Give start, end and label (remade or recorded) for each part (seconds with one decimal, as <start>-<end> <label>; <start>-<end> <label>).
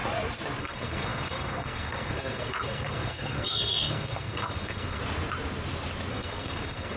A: 0.0-0.6 recorded; 0.6-5.0 remade; 5.0-6.1 recorded; 6.1-7.0 remade